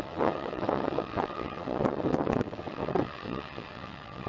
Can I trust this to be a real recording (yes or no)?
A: no